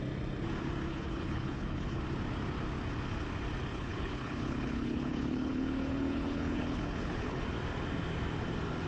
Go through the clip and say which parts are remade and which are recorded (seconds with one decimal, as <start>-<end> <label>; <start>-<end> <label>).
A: 0.0-0.9 recorded; 0.9-2.0 remade; 2.0-3.7 recorded; 3.7-7.4 remade; 7.4-8.9 recorded